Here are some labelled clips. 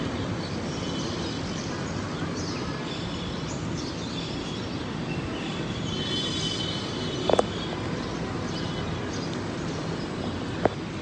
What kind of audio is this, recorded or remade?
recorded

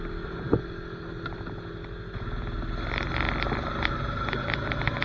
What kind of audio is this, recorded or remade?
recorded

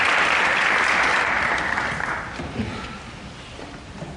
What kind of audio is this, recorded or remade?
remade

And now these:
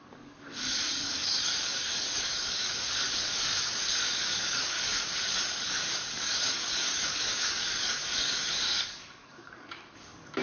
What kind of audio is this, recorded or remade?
remade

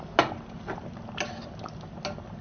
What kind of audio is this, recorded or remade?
recorded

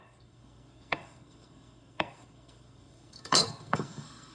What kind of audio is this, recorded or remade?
remade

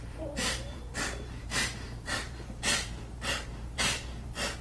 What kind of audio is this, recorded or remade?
remade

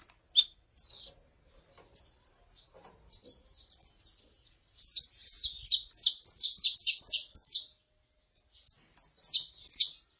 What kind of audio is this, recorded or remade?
recorded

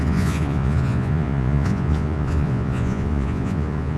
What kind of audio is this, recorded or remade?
remade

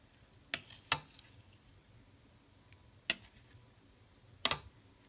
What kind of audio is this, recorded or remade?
recorded